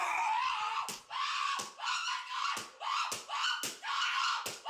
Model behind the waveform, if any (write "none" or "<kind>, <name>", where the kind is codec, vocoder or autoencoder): none